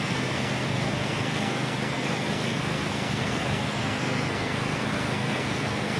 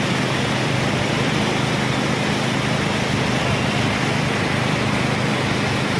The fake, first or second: first